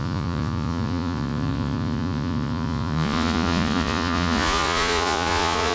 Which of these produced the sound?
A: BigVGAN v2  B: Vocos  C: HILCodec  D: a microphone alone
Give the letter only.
B